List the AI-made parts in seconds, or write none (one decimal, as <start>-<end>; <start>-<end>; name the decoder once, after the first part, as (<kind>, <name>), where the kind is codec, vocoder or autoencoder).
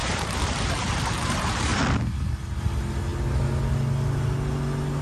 0.0-1.8 (vocoder, BigVGAN v2)